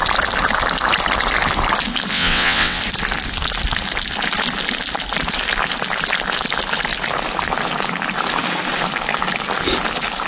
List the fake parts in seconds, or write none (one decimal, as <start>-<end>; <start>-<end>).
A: 2.1-2.8